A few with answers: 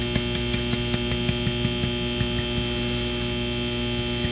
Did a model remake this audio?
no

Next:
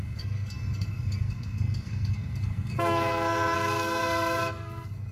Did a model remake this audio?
yes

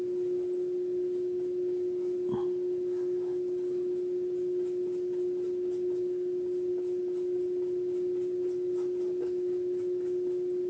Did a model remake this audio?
no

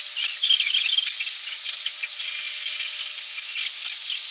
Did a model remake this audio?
no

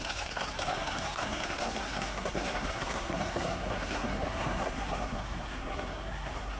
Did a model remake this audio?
yes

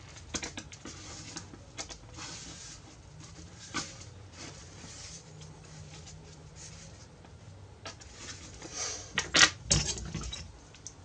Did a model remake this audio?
no